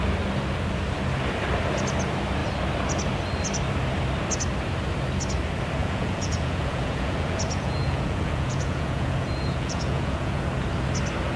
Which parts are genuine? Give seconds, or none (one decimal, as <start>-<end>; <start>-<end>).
0.0-5.8; 10.4-11.4